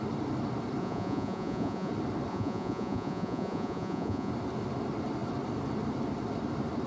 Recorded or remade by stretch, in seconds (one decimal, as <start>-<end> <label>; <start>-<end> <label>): 0.0-0.8 recorded; 0.8-1.9 remade; 1.9-2.3 recorded; 2.3-4.3 remade; 4.3-6.9 recorded